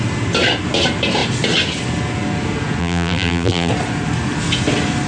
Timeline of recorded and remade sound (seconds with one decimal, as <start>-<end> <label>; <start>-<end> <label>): 0.0-2.8 recorded; 2.8-3.7 remade; 3.7-5.1 recorded